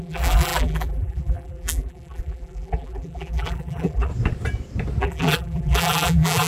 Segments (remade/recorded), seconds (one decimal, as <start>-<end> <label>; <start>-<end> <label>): 0.0-4.1 remade; 4.1-5.0 recorded; 5.0-6.5 remade